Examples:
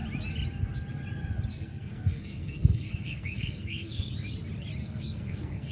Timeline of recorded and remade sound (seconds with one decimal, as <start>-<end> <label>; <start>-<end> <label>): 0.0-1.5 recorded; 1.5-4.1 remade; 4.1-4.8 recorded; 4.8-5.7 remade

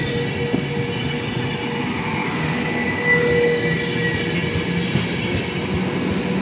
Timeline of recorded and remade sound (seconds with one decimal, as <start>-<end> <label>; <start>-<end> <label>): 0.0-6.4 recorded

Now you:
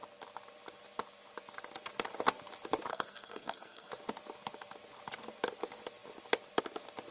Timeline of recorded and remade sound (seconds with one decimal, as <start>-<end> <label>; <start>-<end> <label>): 0.0-2.9 recorded; 2.9-3.9 remade; 3.9-7.1 recorded